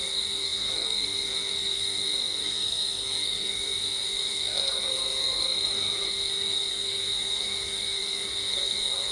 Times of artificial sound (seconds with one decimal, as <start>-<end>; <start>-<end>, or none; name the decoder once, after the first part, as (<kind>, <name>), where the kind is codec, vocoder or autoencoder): 0.0-9.1 (codec, SNAC)